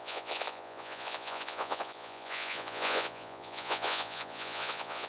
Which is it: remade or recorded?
remade